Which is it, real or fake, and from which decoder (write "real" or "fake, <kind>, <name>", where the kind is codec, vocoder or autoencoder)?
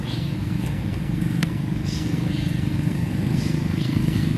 fake, codec, SNAC